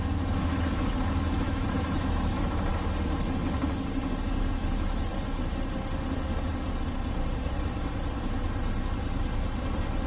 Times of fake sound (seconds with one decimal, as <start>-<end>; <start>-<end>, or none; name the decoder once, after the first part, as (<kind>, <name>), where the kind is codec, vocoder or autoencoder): 0.0-2.7 (autoencoder, DAC-VAE); 4.3-5.1